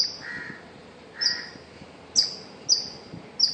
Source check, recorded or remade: recorded